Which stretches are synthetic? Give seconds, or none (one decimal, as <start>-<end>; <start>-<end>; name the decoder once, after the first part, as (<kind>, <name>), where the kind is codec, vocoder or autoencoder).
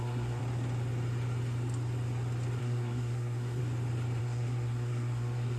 0.0-0.4 (codec, SNAC); 2.6-3.6; 4.2-5.6